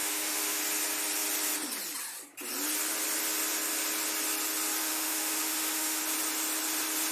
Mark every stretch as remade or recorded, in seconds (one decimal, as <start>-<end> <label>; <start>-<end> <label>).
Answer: 0.0-0.6 remade; 0.6-4.8 recorded; 4.8-6.0 remade; 6.0-7.1 recorded

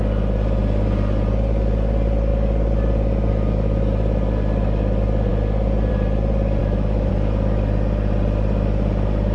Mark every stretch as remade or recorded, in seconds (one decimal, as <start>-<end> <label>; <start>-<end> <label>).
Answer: 0.0-6.6 recorded; 6.6-7.1 remade; 7.1-9.3 recorded

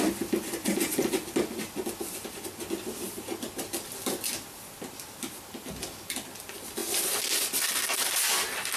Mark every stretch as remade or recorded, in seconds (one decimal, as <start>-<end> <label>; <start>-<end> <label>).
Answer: 0.0-8.8 recorded

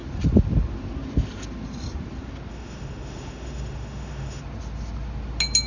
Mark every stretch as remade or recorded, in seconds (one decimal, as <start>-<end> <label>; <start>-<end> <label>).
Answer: 0.0-2.5 recorded; 2.5-4.4 remade; 4.4-5.7 recorded

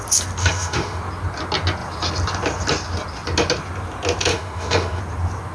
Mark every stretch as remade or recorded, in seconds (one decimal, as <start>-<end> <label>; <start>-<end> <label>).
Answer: 0.0-0.4 recorded; 0.4-1.0 remade; 1.0-4.3 recorded; 4.3-5.0 remade; 5.0-5.5 recorded

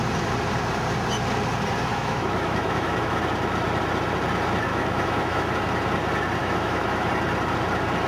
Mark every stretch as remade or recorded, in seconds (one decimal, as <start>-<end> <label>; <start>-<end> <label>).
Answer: 0.0-1.9 recorded; 1.9-3.2 remade; 3.2-4.7 recorded; 4.7-5.5 remade; 5.5-6.4 recorded; 6.4-7.1 remade; 7.1-8.1 recorded

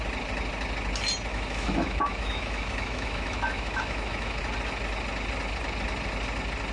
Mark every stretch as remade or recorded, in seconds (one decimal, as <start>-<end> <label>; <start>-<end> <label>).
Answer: 0.0-1.3 recorded; 1.3-4.4 remade; 4.4-6.7 recorded

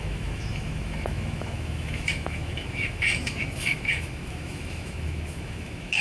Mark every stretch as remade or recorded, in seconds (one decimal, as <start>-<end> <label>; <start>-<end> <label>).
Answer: 0.0-6.0 remade